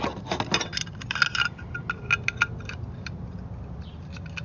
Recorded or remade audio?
recorded